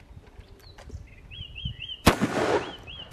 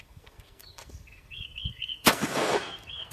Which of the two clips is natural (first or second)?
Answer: first